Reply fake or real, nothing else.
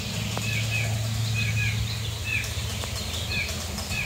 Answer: real